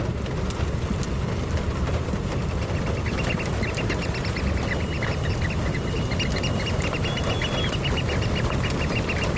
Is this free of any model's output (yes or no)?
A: yes